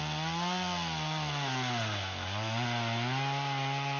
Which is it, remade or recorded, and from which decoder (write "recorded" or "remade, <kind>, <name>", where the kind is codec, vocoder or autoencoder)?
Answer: recorded